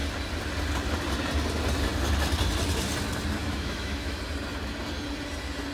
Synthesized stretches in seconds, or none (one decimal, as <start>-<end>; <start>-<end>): 3.4-4.2